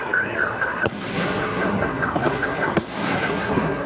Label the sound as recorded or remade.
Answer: remade